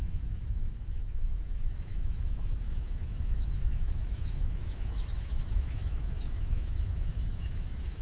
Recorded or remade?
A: remade